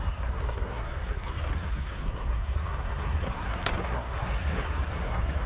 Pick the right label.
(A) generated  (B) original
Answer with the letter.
A